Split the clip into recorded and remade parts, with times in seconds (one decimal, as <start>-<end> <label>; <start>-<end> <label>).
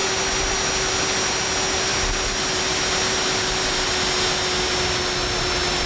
0.0-5.9 recorded